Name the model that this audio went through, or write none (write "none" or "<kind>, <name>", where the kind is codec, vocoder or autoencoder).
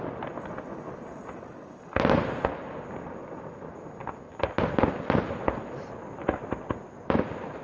none